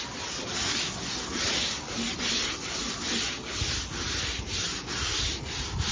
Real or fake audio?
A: real